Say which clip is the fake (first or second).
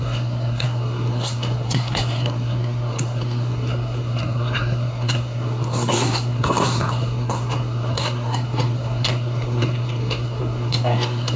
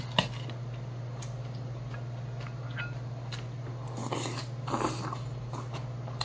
first